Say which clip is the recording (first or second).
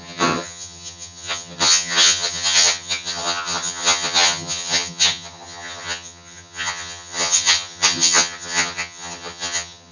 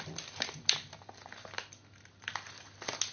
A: second